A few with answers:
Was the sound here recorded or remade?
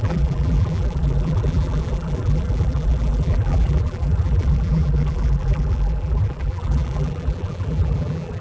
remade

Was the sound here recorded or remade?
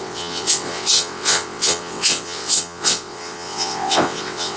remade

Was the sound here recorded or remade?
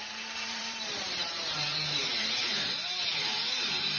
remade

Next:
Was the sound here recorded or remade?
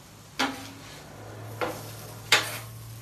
recorded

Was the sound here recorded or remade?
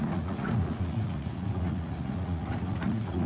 remade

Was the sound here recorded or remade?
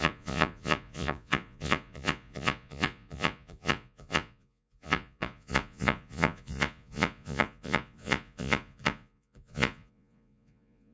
remade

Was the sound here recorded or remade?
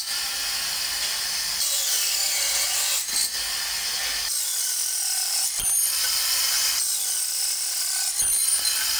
recorded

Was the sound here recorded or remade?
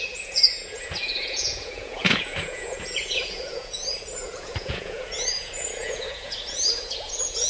remade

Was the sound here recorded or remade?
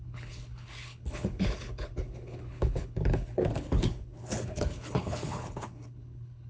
remade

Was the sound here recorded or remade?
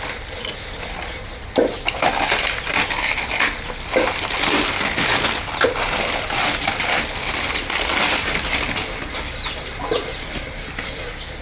recorded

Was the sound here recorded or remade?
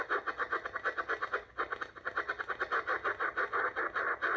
recorded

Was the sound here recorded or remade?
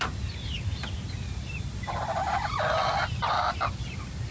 recorded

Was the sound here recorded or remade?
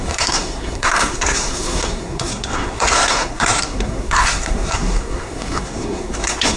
remade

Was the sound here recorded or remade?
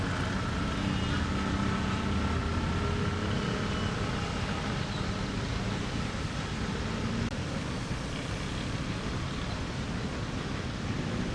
recorded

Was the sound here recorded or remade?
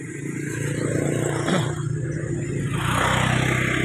recorded